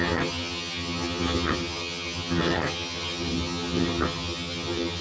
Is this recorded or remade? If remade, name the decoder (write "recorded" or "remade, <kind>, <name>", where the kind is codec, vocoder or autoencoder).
remade, vocoder, HiFi-GAN